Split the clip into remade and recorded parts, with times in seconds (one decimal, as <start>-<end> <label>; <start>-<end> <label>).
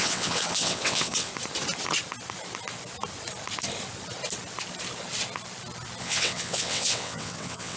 0.0-1.3 remade; 1.3-6.0 recorded; 6.0-7.8 remade